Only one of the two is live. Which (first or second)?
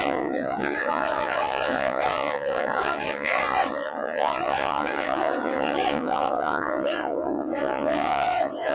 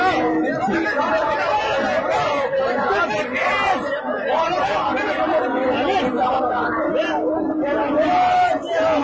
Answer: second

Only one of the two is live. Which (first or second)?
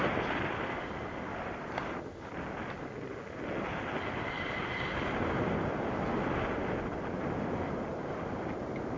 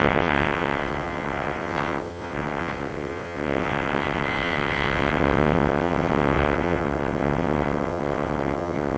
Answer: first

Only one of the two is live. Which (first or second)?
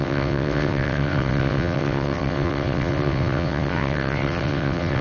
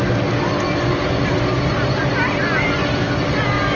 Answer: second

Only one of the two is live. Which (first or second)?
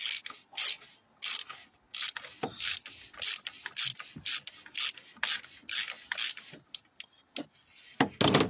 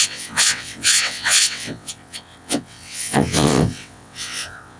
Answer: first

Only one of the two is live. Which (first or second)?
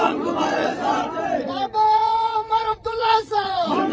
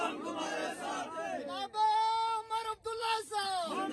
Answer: second